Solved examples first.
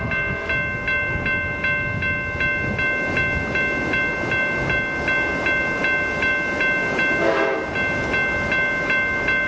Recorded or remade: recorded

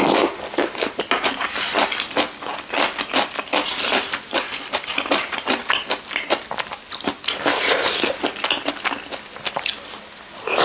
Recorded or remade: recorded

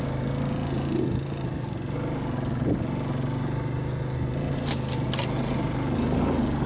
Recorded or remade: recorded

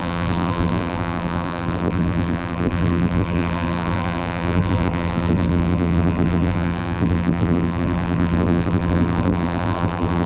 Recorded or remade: remade